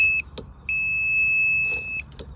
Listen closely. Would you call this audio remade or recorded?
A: recorded